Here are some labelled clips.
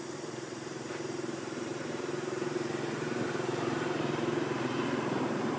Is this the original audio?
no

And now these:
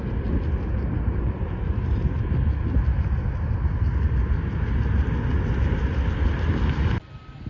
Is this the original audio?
yes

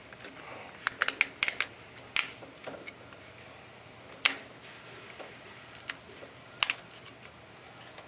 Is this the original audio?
yes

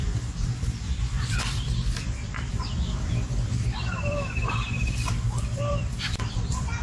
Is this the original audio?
no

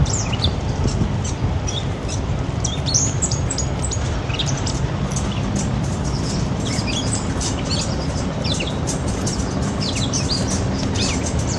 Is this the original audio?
no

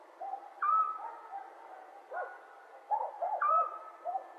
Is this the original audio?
yes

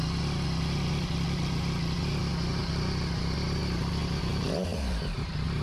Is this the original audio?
yes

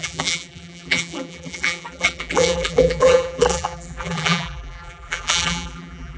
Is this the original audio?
no